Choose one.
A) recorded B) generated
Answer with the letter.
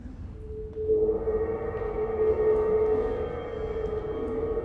A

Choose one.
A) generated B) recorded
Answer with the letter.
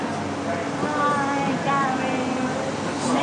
B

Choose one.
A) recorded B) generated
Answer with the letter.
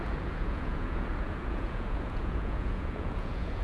B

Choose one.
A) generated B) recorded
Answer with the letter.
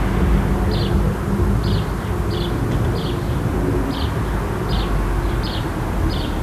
B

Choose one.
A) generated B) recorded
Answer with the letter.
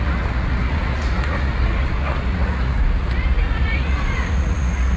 A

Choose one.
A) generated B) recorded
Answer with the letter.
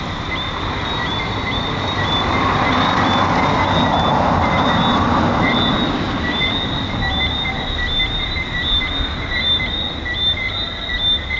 B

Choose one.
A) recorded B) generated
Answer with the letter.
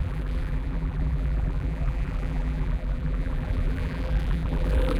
B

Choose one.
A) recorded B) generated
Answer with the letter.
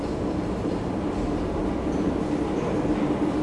A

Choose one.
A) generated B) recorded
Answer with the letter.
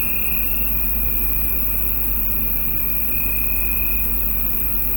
B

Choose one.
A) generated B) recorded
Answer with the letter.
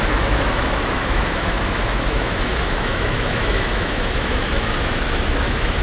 A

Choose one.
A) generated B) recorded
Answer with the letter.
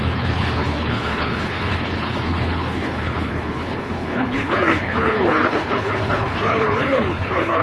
A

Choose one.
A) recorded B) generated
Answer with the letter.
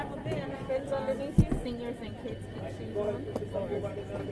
A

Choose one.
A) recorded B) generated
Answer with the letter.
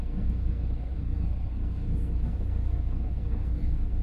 B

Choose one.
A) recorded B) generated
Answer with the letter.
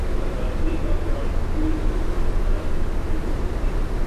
A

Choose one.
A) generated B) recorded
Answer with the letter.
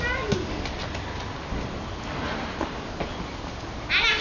B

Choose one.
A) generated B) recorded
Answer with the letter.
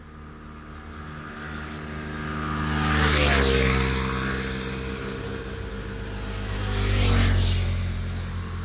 B